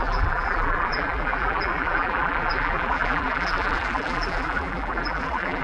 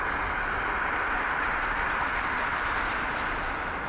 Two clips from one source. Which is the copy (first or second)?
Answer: first